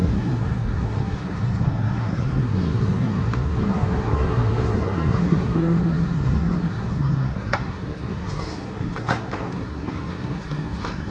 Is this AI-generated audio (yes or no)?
yes